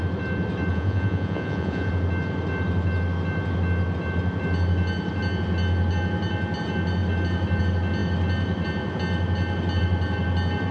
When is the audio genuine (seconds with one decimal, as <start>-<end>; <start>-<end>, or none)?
0.0-0.7; 1.9-10.7